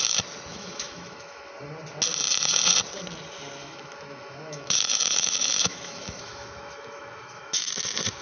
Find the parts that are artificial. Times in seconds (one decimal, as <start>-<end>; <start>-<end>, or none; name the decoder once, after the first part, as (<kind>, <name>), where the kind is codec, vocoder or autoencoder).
0.5-1.5 (autoencoder, DAC-VAE); 3.6-7.7